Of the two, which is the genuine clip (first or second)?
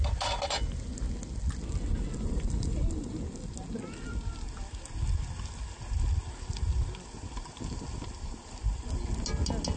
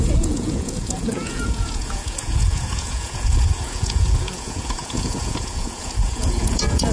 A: first